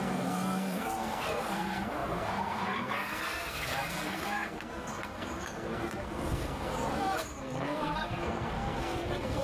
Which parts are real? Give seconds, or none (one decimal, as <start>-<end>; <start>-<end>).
none